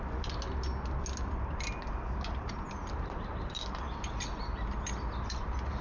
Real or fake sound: real